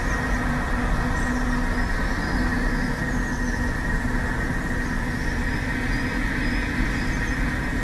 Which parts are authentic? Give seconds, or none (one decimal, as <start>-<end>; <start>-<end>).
0.0-2.5; 3.0-7.8

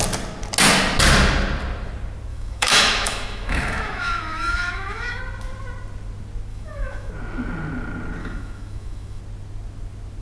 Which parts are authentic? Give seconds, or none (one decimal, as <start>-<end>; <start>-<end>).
0.0-2.3; 5.2-6.5; 7.1-8.2; 9.2-10.2

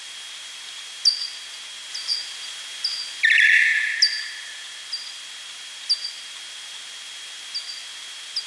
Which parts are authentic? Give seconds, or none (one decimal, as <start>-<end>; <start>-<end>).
0.0-8.5

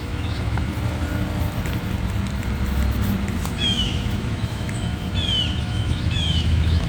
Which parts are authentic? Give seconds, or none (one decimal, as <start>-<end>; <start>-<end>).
0.7-3.5; 4.9-5.6

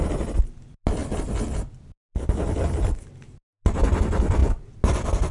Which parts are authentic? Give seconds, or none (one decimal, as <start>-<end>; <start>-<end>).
0.0-5.3